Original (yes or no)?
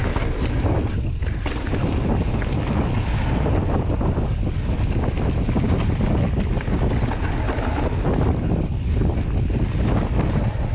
yes